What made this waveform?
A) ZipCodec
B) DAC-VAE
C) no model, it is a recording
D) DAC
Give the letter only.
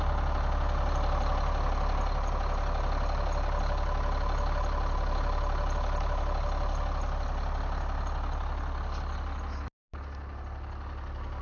C